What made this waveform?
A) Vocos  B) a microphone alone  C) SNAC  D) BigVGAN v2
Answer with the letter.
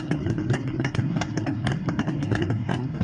C